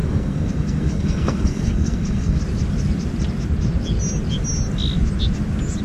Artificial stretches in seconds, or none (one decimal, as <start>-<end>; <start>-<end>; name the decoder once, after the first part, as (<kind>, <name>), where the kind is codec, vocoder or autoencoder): 0.0-2.4 (codec, SNAC)